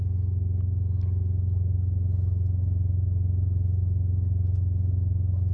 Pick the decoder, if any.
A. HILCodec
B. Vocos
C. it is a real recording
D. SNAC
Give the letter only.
C